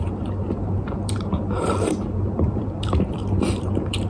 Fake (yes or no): yes